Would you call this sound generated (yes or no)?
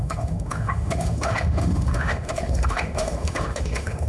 yes